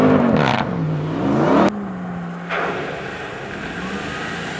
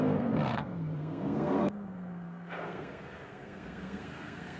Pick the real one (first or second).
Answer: first